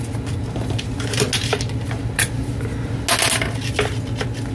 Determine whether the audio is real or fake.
real